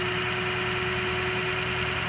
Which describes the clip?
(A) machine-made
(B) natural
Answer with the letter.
B